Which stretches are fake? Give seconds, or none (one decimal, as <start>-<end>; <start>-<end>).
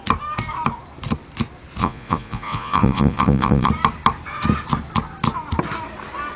1.8-3.7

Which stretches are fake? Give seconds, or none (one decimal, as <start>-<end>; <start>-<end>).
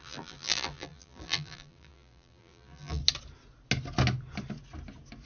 0.0-3.0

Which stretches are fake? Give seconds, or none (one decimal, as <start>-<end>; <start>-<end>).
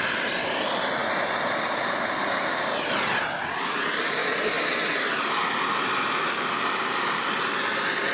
1.0-3.2; 4.2-5.0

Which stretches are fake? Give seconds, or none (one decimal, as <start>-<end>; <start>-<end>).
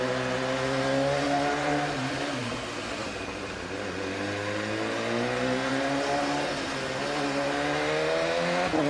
none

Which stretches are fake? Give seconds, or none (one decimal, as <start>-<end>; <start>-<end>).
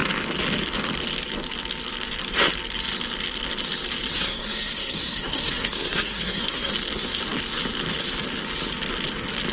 4.1-6.7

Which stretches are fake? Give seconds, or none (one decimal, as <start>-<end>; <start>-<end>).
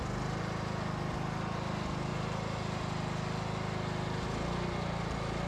none